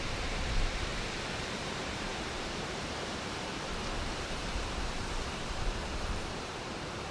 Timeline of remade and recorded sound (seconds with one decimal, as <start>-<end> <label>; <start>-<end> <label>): 0.0-0.9 remade; 0.9-1.6 recorded; 1.6-7.1 remade